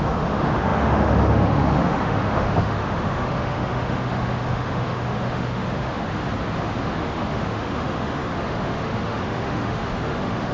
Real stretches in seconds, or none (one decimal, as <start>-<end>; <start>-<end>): 6.2-6.8